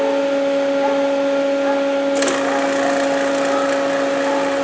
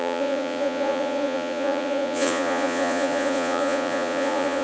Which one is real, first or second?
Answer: first